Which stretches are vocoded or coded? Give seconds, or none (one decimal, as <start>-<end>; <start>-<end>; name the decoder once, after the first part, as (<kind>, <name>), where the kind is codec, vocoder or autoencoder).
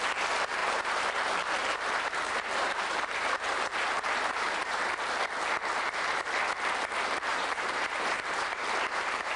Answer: 0.6-1.1 (vocoder, BigVGAN v2); 1.6-4.9; 7.3-9.4